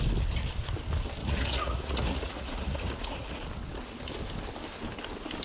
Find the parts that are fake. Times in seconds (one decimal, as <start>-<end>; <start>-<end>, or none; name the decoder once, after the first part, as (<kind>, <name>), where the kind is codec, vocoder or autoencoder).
1.2-3.4 (vocoder, Vocos)